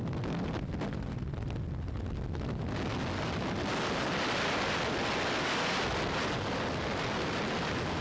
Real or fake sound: real